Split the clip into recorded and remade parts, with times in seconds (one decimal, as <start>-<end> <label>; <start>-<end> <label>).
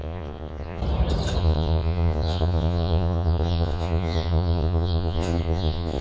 0.0-0.8 remade; 0.8-1.4 recorded; 1.4-6.0 remade